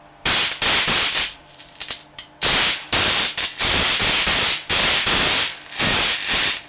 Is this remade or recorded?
remade